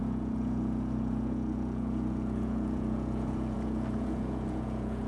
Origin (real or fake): fake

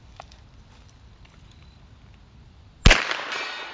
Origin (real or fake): real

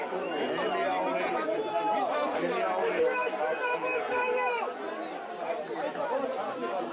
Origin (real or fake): real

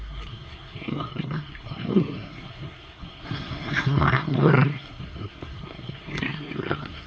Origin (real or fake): fake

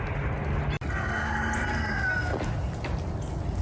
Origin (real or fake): real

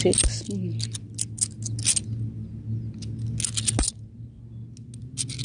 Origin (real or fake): real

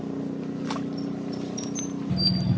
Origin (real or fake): real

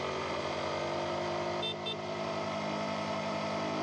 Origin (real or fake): real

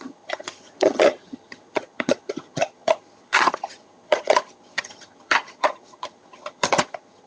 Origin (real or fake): fake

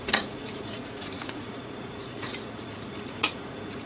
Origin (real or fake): fake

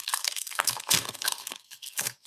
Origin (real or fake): fake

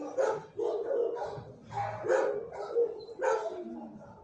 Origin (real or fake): real